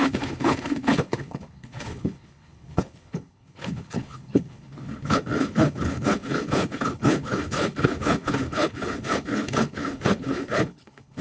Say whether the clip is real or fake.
fake